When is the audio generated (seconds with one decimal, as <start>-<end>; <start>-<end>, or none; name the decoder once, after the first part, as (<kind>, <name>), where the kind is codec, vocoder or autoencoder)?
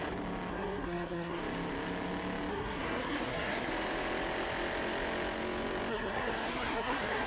0.5-1.4 (codec, SNAC); 2.5-3.7; 5.9-7.3